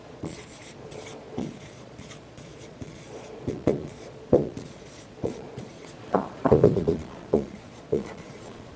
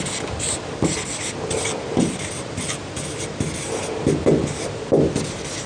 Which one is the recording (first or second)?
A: second